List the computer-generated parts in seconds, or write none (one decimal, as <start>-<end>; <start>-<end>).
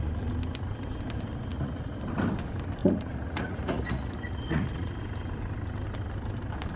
1.5-2.0; 2.8-5.0